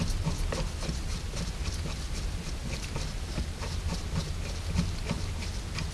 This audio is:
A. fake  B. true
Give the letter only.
B